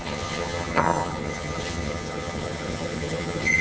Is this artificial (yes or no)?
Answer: yes